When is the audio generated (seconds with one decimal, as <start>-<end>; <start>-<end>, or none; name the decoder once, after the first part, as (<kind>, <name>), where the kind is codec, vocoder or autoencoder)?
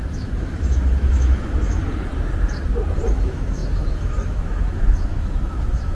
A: 0.0-1.8 (autoencoder, DAC-VAE); 3.1-5.9